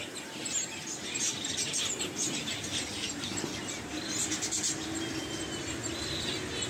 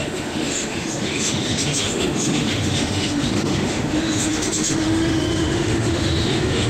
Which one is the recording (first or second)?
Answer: first